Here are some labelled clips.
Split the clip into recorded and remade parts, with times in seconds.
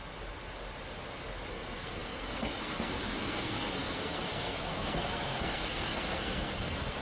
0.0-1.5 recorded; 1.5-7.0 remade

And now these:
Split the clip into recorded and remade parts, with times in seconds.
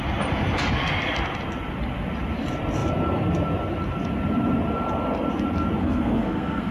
0.0-5.8 recorded; 5.8-6.7 remade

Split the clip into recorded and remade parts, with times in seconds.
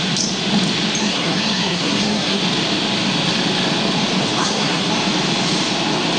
0.0-1.0 recorded; 1.0-2.4 remade; 2.4-4.4 recorded; 4.4-4.9 remade; 4.9-6.2 recorded